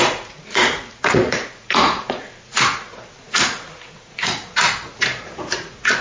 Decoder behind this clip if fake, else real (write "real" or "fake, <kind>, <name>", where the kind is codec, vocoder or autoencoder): fake, vocoder, Vocos